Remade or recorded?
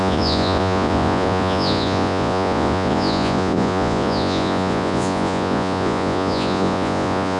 remade